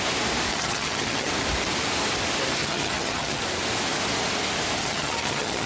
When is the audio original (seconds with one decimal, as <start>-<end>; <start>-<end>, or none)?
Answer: 0.0-0.5; 1.3-2.6; 3.4-4.8